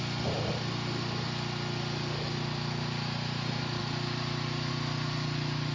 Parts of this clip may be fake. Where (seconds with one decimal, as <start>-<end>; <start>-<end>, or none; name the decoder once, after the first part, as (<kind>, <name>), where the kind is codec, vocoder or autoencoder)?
3.8-4.7 (vocoder, BigVGAN v2)